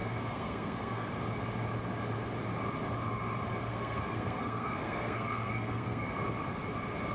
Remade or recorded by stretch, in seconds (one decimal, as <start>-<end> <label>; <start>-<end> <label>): 0.0-1.1 remade; 1.1-3.7 recorded; 3.7-6.1 remade; 6.1-7.1 recorded